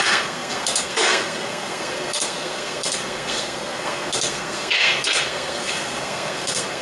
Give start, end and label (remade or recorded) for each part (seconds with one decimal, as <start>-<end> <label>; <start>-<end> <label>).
0.0-6.8 remade